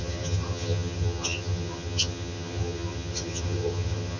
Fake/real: fake